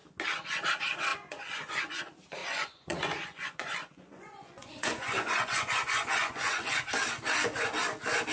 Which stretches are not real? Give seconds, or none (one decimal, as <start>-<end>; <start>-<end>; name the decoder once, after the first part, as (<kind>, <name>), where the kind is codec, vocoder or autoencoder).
1.1-2.0 (vocoder, Vocos); 2.4-6.8